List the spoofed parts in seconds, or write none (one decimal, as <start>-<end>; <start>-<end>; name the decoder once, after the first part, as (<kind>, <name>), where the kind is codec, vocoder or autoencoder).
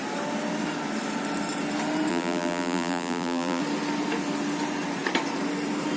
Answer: 2.1-3.6 (vocoder, BigVGAN v2)